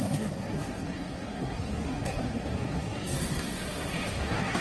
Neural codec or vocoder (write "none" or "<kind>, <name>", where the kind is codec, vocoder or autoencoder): codec, SNAC